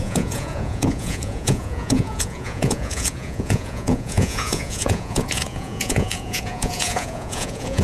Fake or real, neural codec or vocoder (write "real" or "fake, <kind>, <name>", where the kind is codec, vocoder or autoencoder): fake, vocoder, Vocos